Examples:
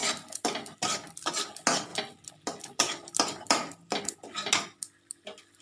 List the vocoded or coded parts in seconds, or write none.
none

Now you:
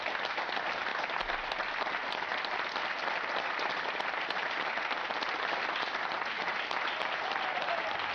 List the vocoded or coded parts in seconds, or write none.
none

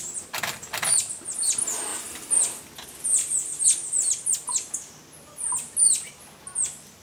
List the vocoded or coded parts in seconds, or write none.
none

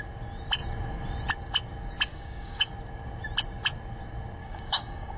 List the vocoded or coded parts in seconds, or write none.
2.1-2.7 (codec, DAC); 4.4-5.2